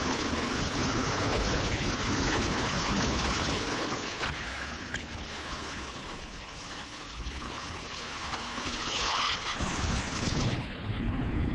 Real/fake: fake